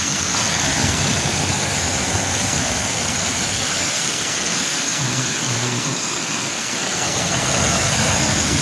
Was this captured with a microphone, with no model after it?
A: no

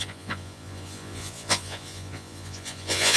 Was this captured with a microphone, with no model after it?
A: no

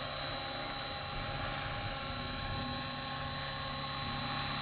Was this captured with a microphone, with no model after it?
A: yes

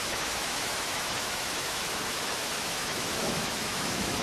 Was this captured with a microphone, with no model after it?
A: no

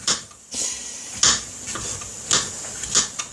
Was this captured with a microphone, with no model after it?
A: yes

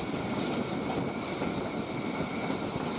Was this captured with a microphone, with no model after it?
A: yes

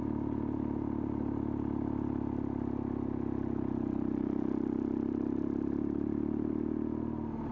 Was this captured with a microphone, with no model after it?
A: yes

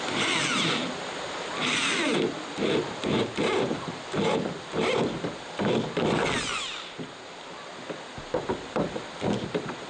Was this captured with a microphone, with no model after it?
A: yes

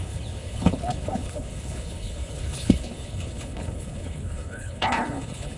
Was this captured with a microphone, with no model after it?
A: no